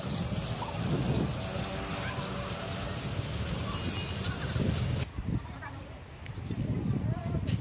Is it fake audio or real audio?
real